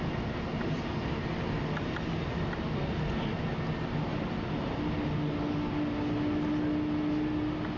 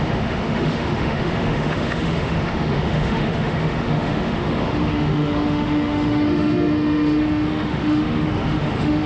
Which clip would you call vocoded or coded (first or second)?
second